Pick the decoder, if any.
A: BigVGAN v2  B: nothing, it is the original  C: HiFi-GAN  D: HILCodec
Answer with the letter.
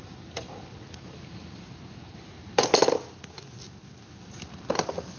B